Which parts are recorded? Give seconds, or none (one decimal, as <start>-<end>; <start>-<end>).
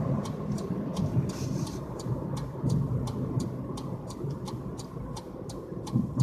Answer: none